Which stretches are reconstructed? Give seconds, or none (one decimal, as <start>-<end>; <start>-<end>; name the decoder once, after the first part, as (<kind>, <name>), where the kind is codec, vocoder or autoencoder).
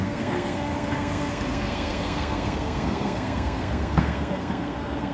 0.0-5.1 (codec, SNAC)